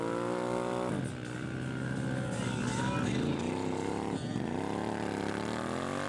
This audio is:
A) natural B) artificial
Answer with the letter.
A